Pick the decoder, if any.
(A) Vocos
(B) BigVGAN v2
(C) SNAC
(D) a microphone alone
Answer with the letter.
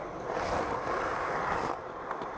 D